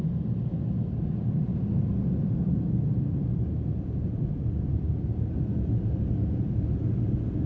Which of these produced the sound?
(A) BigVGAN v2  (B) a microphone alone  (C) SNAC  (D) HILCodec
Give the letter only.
B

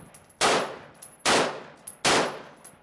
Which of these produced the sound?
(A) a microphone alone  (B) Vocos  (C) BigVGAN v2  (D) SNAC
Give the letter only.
A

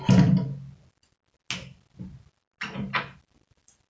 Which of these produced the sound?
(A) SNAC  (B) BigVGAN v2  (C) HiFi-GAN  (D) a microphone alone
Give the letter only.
D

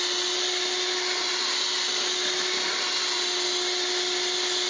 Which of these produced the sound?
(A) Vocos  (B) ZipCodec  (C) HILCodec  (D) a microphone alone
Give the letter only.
D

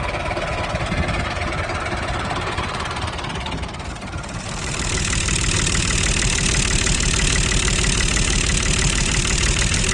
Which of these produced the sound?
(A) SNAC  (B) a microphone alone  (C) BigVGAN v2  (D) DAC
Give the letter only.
C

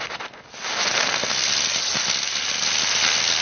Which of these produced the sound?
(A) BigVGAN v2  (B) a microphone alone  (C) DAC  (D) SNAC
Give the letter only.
B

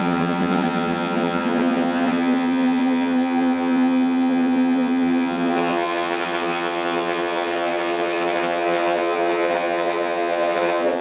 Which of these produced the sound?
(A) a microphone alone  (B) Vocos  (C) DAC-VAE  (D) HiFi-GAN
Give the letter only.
D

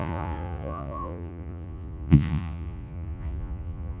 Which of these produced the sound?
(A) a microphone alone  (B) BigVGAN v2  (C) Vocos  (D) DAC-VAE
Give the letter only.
C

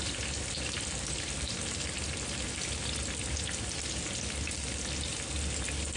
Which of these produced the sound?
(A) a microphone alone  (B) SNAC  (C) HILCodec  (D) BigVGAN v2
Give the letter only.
A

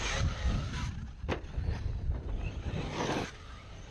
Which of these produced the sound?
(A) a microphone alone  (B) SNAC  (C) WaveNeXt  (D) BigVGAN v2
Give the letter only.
A